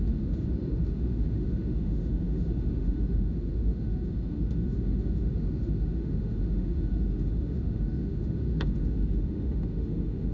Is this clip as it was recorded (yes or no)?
no